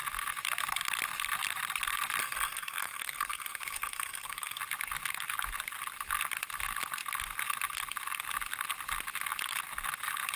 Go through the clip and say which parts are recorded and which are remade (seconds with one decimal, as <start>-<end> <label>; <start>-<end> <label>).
0.0-2.2 recorded; 2.2-4.6 remade; 4.6-10.4 recorded